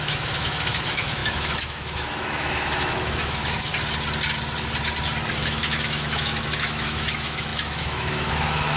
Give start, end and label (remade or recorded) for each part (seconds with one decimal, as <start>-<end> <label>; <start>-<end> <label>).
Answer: 0.0-3.7 remade; 3.7-5.4 recorded; 5.4-8.8 remade